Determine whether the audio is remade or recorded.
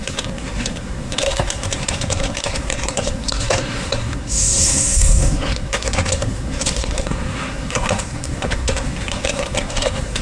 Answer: remade